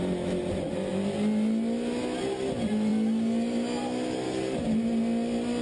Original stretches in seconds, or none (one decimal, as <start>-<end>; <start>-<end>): 0.0-5.6